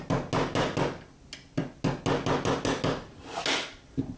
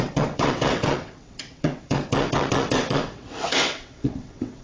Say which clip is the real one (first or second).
first